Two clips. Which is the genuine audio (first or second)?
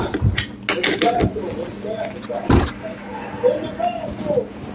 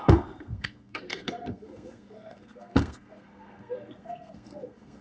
first